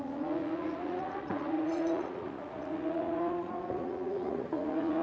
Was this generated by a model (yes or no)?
yes